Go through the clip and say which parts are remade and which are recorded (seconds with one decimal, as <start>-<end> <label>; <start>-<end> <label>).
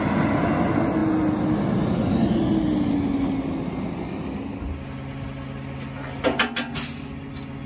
0.0-7.7 recorded